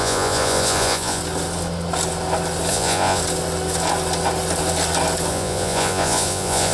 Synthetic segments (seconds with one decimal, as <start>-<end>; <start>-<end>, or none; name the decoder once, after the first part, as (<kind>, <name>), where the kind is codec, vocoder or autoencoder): 0.0-1.2 (vocoder, Vocos); 2.7-3.2; 5.3-6.7